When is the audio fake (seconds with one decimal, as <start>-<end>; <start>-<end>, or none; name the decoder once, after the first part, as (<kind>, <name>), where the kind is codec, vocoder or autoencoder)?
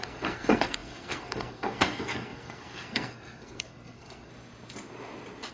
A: 0.0-4.3 (codec, SNAC)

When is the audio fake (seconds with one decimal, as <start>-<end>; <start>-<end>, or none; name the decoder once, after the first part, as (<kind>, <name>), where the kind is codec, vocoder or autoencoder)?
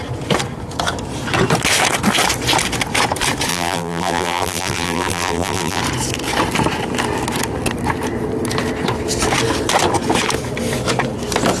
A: 3.5-5.8 (vocoder, BigVGAN v2)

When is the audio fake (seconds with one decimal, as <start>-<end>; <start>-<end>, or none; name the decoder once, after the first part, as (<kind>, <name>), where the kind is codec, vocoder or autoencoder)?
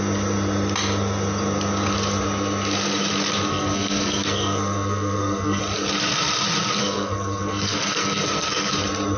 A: 3.5-5.6 (codec, SNAC); 6.8-8.7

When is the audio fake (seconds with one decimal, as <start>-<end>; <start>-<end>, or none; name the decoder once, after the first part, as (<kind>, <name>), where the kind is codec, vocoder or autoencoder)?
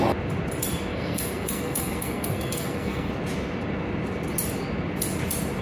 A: 0.9-3.1 (codec, SNAC)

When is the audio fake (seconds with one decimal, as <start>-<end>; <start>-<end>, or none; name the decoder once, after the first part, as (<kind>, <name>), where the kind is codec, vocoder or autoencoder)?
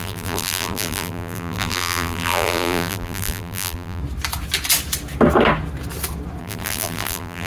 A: 0.0-4.0 (vocoder, BigVGAN v2); 6.4-7.5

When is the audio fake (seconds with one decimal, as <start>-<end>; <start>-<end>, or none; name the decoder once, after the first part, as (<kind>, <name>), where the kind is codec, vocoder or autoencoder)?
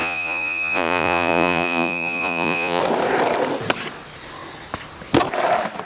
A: 0.0-2.8 (vocoder, Vocos)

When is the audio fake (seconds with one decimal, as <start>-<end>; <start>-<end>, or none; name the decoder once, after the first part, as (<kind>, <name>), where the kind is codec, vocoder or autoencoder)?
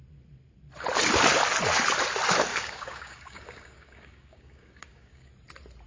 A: 2.5-5.3 (codec, DAC)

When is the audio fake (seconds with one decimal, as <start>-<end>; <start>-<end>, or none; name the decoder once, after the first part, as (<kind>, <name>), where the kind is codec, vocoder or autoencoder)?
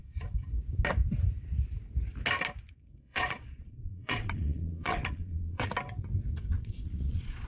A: 2.7-5.7 (vocoder, Vocos); 6.5-7.5